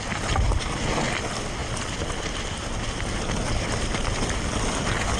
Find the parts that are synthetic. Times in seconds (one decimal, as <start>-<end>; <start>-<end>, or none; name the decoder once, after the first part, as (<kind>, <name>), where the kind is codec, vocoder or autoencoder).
none